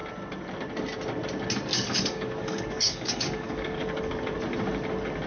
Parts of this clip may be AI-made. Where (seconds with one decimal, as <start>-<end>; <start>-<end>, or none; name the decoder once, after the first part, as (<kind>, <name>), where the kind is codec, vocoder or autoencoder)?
1.7-4.0 (codec, DAC)